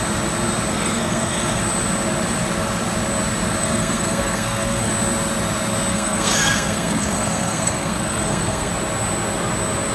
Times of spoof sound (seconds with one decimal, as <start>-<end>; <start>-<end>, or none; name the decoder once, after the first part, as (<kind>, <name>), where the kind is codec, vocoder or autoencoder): 0.7-1.6 (codec, SNAC); 3.6-4.9; 5.9-8.7